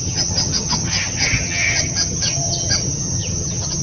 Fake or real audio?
fake